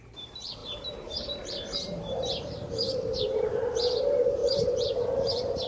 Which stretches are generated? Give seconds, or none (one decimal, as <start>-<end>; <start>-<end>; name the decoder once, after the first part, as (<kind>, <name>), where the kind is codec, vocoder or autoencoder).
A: 0.0-5.7 (vocoder, BigVGAN v2)